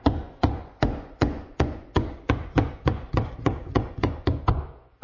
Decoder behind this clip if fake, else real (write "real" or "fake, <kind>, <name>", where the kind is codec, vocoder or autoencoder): fake, vocoder, Vocos